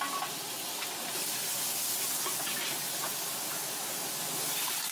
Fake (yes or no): no